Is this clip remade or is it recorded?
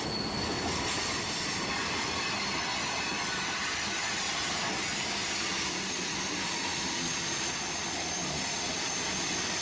recorded